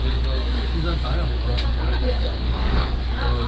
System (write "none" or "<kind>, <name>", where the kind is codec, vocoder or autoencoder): codec, DAC